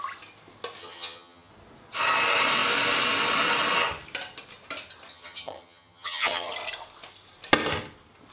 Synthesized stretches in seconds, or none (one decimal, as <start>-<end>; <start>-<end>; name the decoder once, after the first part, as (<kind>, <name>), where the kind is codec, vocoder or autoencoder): 0.8-1.5 (vocoder, HiFi-GAN); 5.1-6.5